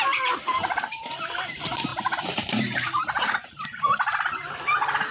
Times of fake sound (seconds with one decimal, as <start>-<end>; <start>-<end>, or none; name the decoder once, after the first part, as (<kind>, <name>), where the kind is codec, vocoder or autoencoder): 0.0-5.1 (vocoder, BigVGAN v2)